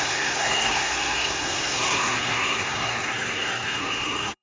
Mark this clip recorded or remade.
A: remade